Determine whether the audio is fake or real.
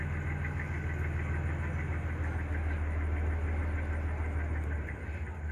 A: real